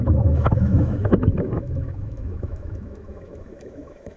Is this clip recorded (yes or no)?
no